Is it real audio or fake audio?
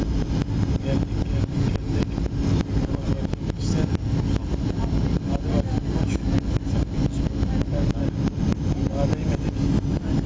real